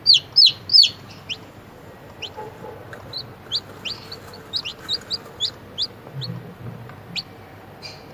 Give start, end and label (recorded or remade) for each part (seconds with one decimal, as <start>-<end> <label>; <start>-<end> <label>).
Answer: 0.0-8.1 recorded